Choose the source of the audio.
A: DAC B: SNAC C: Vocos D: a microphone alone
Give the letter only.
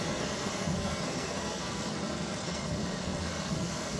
B